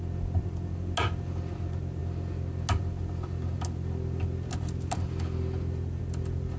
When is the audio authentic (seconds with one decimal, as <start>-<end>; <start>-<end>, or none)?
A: 0.0-6.6